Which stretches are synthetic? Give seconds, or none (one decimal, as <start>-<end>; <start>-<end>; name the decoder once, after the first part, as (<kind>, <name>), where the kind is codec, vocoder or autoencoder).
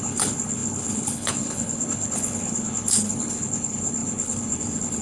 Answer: 0.0-5.0 (codec, HILCodec)